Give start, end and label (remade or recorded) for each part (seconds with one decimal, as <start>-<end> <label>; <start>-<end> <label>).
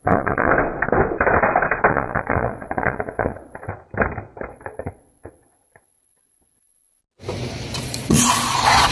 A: 0.0-0.5 remade; 0.5-1.9 recorded; 1.9-3.7 remade; 3.7-4.5 recorded; 4.5-7.0 remade; 7.0-7.8 recorded; 7.8-8.9 remade